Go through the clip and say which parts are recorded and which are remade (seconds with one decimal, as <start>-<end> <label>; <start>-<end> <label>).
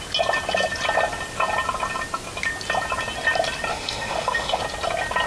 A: 0.0-3.7 recorded; 3.7-4.6 remade; 4.6-5.3 recorded